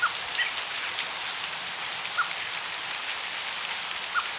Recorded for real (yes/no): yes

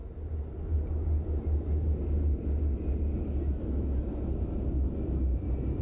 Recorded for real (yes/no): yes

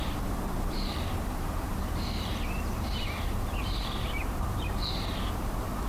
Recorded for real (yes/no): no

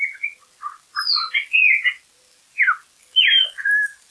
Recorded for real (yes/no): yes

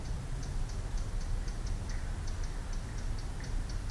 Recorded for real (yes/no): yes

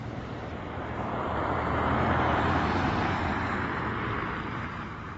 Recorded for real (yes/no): no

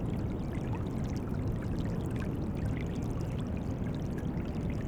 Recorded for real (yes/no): yes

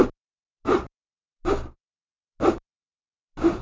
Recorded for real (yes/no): yes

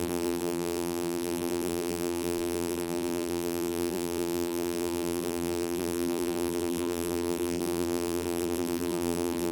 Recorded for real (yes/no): no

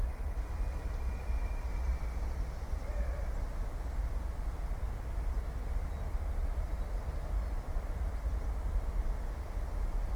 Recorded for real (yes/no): yes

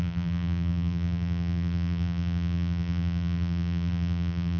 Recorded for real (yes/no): no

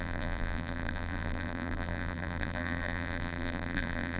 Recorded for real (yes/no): no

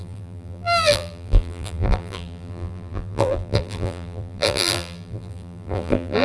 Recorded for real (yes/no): no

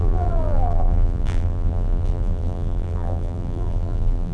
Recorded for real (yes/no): no